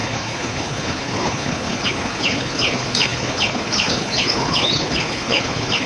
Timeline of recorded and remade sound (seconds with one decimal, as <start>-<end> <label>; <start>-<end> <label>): 0.0-5.9 remade

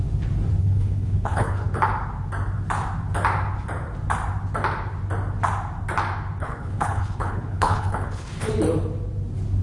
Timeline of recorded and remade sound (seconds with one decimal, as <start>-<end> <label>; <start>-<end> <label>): 0.0-0.6 recorded; 0.6-1.8 remade; 1.8-6.4 recorded; 6.4-8.5 remade; 8.5-9.6 recorded

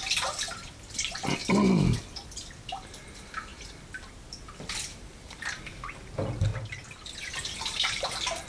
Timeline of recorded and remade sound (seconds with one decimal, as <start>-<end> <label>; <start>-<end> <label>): 0.0-8.5 recorded

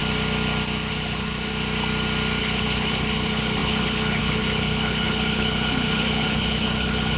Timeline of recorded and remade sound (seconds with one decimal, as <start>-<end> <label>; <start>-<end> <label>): 0.0-0.9 recorded; 0.9-1.5 remade; 1.5-2.4 recorded; 2.4-7.2 remade

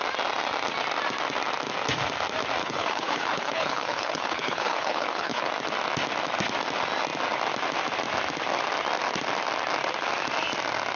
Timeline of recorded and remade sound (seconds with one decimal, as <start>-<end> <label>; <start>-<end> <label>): 0.0-2.6 recorded; 2.6-5.5 remade; 5.5-11.0 recorded

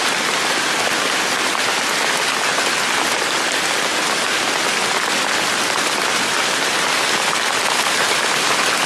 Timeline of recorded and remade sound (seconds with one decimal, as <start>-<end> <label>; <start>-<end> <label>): 0.0-8.9 recorded